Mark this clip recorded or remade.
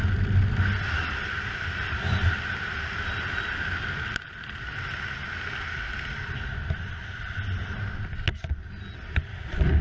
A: recorded